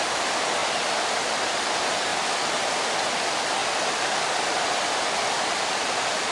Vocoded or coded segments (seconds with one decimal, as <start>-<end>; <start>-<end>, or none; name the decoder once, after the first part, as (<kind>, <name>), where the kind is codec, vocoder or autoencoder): 0.6-1.2 (vocoder, BigVGAN v2); 3.6-6.3